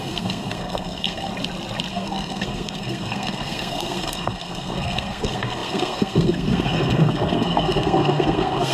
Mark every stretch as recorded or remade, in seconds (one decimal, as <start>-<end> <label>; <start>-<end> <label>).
0.0-1.3 remade; 1.3-1.9 recorded; 1.9-8.7 remade